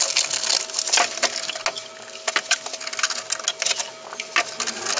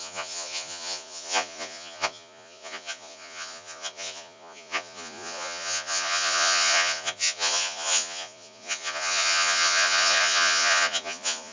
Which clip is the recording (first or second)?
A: first